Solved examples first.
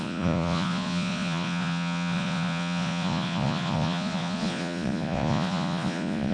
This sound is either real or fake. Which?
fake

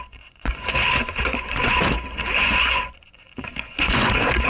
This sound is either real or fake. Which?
fake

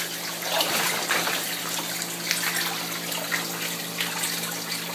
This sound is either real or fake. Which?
real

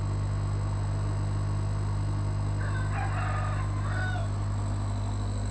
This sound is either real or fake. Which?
real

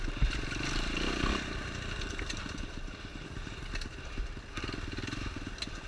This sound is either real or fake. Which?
real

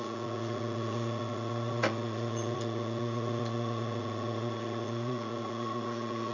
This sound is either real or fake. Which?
fake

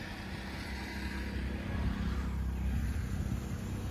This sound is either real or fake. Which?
real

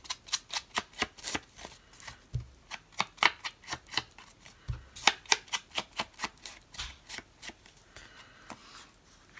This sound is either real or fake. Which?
real